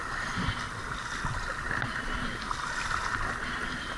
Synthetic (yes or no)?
no